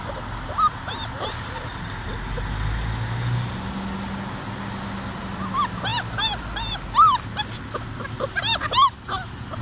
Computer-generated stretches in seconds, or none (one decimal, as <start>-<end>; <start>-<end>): none